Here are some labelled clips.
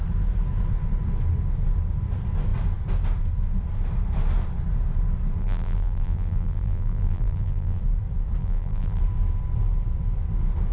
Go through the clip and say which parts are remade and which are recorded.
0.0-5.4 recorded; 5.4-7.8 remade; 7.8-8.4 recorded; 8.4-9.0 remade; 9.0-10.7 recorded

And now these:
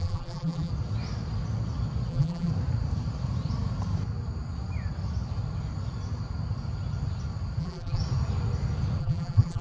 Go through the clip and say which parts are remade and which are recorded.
0.0-0.7 remade; 0.7-2.1 recorded; 2.1-2.5 remade; 2.5-7.6 recorded; 7.6-8.0 remade; 8.0-9.0 recorded; 9.0-9.6 remade

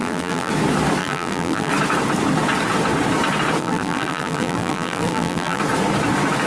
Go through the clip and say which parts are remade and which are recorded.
0.0-0.5 remade; 0.5-1.0 recorded; 1.0-1.7 remade; 1.7-3.6 recorded; 3.6-5.6 remade; 5.6-6.5 recorded

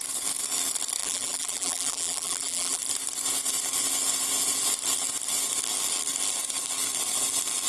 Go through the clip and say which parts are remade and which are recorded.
0.0-1.0 recorded; 1.0-2.8 remade; 2.8-7.7 recorded

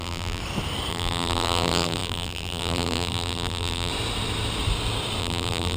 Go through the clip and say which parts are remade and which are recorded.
0.0-0.4 remade; 0.4-0.9 recorded; 0.9-3.9 remade; 3.9-5.2 recorded; 5.2-5.8 remade

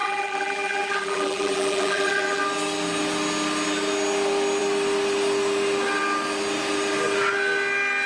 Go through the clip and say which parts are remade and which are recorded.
0.0-2.4 remade; 2.4-8.1 recorded

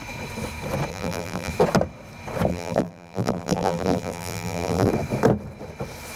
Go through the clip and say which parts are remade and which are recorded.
0.0-0.9 recorded; 0.9-1.5 remade; 1.5-2.5 recorded; 2.5-4.9 remade; 4.9-6.2 recorded